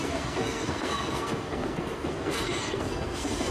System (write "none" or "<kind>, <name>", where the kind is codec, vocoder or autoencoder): codec, SNAC